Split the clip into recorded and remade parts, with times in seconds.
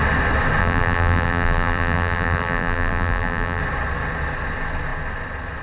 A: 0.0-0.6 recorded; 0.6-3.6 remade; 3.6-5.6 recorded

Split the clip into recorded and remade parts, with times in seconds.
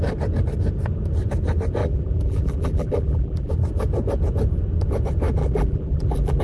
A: 0.0-1.8 recorded; 1.8-3.5 remade; 3.5-5.4 recorded; 5.4-6.4 remade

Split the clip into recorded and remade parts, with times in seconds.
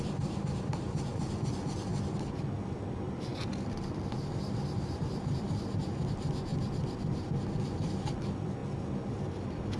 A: 0.0-1.9 remade; 1.9-2.6 recorded; 2.6-6.5 remade; 6.5-7.6 recorded; 7.6-8.6 remade; 8.6-9.1 recorded; 9.1-9.8 remade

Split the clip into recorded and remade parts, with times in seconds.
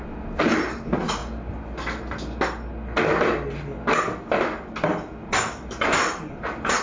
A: 0.0-1.2 remade; 1.2-5.3 recorded; 5.3-6.8 remade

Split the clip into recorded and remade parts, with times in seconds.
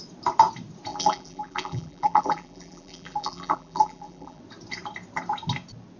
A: 0.0-0.9 recorded; 0.9-4.4 remade; 4.4-6.0 recorded